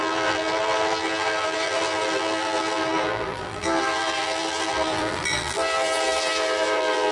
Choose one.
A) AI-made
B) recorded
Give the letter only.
A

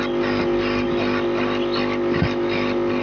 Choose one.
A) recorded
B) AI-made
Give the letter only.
A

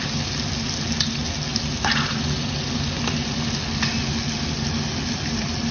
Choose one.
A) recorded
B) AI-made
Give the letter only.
A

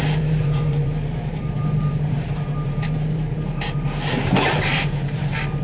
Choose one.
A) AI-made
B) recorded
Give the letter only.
A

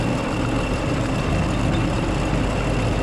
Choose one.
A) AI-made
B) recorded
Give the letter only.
B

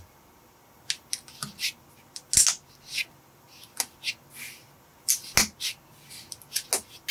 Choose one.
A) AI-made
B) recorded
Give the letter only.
B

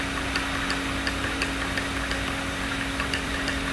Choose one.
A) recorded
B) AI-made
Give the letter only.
B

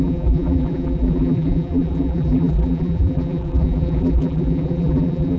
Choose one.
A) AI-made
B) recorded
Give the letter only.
A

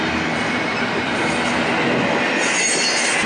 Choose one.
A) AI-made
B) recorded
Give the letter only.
B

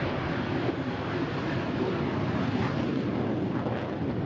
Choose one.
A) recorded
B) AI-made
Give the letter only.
A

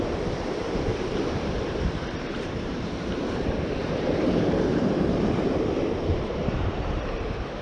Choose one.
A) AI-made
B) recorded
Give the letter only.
A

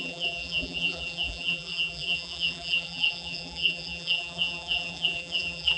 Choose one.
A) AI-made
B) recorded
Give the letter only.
A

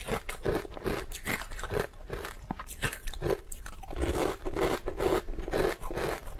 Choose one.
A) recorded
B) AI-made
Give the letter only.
A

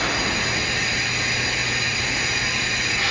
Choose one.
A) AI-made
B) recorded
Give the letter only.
B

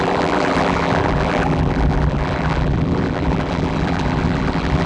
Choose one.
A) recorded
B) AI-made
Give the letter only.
B